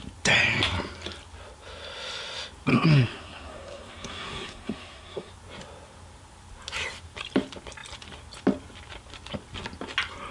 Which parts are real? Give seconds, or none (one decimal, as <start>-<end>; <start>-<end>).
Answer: 0.0-2.7; 5.3-10.3